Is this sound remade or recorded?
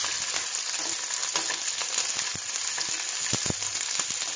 recorded